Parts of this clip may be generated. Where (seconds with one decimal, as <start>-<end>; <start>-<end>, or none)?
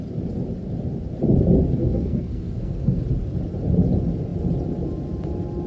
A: 1.8-3.0